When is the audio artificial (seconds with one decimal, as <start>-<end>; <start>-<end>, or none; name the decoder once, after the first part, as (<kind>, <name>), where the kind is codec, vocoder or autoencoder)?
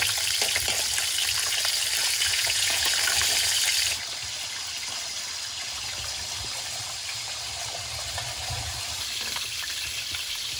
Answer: 2.0-2.9 (vocoder, Vocos)